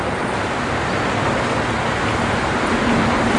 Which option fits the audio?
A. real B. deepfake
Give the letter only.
A